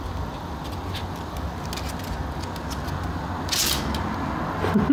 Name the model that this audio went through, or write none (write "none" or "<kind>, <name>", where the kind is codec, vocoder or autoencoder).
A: none